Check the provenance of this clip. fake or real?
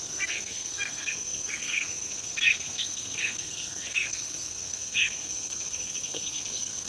fake